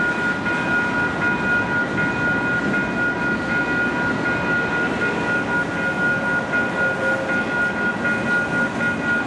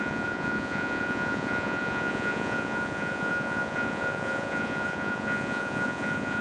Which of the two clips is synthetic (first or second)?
second